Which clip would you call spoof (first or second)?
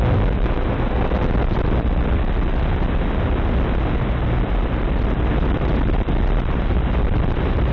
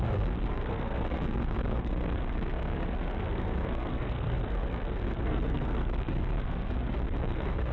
second